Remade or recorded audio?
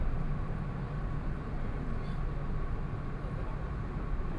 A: recorded